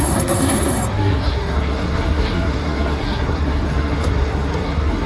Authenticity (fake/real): fake